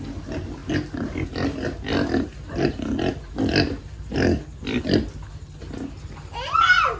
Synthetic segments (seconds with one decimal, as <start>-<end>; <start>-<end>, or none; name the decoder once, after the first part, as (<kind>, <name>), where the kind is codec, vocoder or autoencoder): none